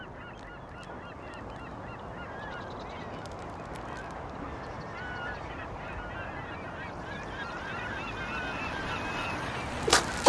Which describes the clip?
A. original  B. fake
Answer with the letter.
A